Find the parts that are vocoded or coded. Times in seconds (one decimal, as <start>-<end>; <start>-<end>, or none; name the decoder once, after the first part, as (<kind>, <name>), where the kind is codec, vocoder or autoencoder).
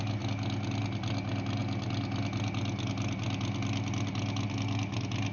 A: none